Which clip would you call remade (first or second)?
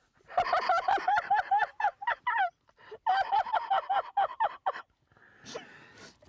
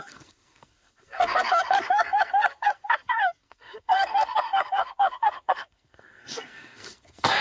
second